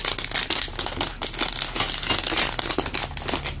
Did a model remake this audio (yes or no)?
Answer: no